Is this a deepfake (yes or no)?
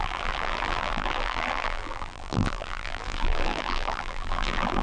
yes